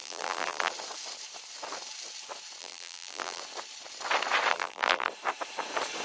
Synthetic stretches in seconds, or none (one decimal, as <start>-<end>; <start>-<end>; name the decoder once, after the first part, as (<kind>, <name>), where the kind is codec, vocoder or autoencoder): 0.0-0.7 (vocoder, BigVGAN v2); 2.6-3.4; 4.5-5.1